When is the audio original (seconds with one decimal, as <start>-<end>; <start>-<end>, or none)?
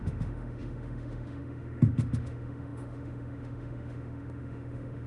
none